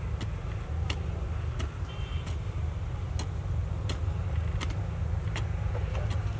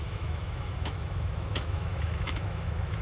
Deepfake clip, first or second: second